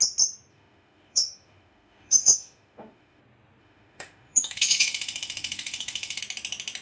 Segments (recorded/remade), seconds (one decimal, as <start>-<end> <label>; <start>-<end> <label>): 0.0-0.5 recorded; 0.5-3.2 remade; 3.2-3.6 recorded; 3.6-6.2 remade; 6.2-6.8 recorded